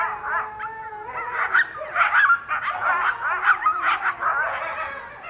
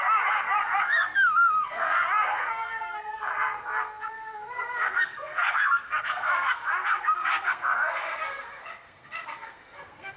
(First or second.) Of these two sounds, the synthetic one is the second